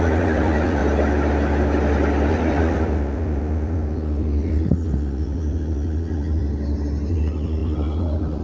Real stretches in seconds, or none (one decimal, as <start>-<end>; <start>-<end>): 0.8-2.3; 6.4-7.1